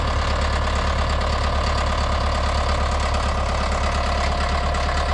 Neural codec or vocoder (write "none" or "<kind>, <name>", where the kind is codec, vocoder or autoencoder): none